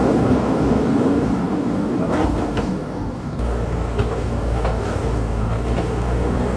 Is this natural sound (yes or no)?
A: no